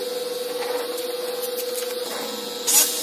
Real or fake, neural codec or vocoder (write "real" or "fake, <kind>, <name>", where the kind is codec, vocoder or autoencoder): real